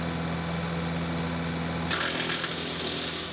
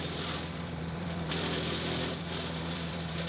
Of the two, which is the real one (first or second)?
first